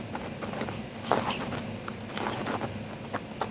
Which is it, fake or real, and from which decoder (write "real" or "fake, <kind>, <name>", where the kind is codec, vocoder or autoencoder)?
real